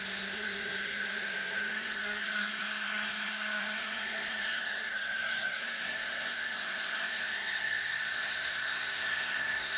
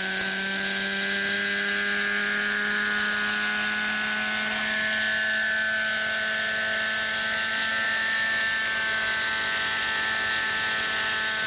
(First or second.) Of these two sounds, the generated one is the first